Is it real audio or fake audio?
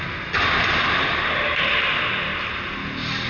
real